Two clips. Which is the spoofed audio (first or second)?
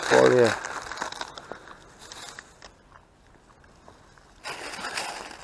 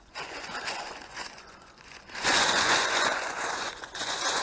second